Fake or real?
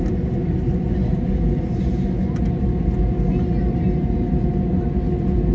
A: real